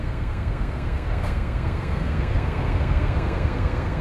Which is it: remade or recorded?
remade